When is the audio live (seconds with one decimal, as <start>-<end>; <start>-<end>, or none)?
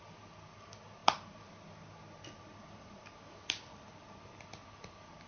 0.0-5.3